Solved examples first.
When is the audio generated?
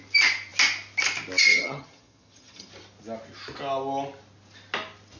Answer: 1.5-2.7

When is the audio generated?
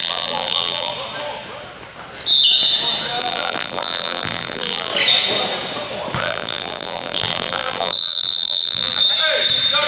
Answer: 0.0-0.9; 3.2-4.9; 6.2-9.0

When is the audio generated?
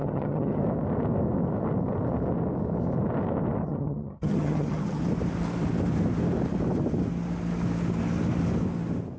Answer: 0.0-0.6; 3.6-5.0